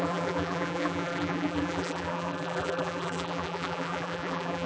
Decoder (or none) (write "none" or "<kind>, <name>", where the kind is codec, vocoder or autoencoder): vocoder, BigVGAN v2